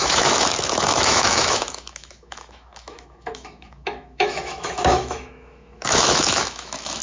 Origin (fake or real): fake